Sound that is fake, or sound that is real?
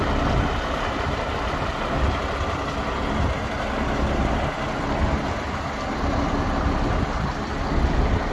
real